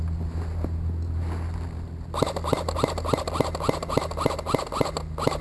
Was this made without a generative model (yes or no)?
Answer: yes